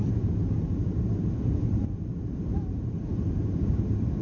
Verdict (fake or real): fake